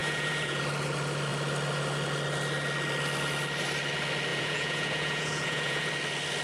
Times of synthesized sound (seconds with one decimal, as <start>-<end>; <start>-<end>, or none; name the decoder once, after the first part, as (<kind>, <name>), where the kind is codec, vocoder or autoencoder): 0.0-0.6 (vocoder, Vocos); 4.3-5.9